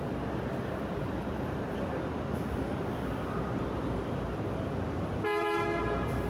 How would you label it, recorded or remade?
recorded